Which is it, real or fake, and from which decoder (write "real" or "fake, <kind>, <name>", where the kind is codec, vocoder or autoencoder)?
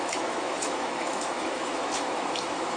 fake, autoencoder, DAC-VAE